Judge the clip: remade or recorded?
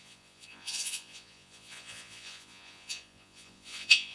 remade